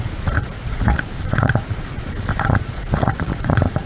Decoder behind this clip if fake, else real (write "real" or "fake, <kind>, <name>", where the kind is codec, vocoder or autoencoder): fake, vocoder, Vocos